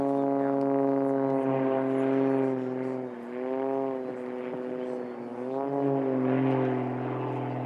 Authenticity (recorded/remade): recorded